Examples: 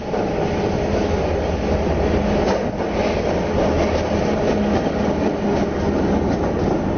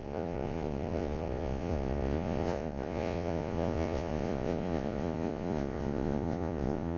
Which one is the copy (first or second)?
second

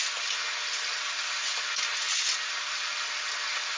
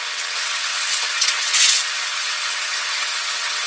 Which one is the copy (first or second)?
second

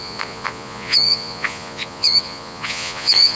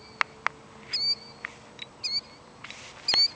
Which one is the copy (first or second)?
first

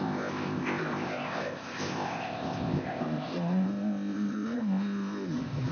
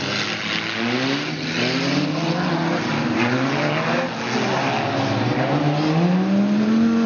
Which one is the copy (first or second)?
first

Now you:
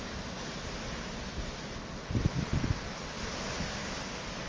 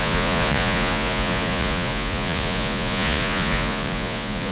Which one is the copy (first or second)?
second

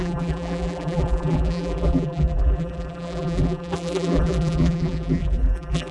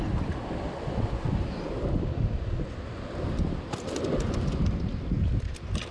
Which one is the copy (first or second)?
first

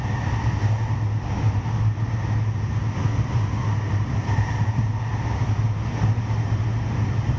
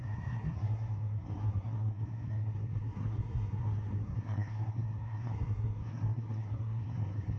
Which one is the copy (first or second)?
second